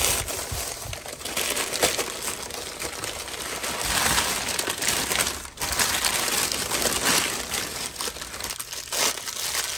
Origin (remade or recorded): recorded